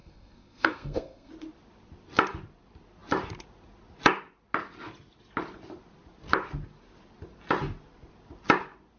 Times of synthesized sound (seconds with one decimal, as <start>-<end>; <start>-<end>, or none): 0.0-1.3